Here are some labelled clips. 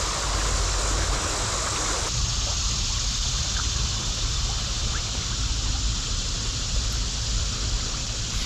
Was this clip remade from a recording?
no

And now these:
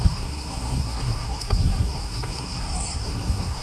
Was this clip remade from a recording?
yes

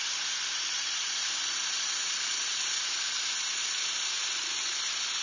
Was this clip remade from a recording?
no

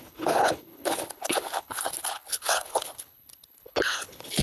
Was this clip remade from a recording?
yes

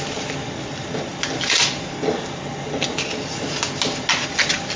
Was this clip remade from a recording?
no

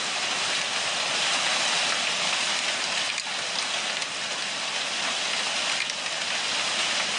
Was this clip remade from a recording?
no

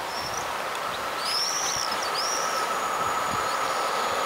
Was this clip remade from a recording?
no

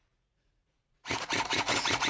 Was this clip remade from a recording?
yes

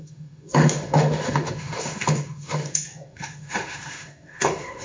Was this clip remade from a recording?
yes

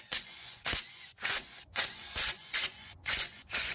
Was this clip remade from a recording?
yes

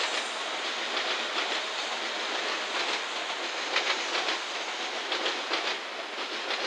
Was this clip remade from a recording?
no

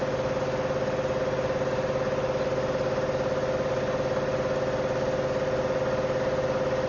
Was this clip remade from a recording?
no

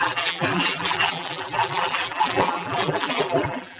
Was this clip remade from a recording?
yes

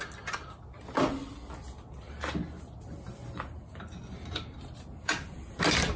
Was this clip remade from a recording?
no